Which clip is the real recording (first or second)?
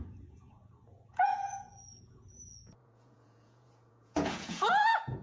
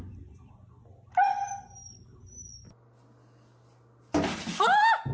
second